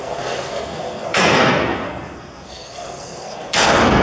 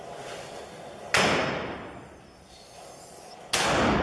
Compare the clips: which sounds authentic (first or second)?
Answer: second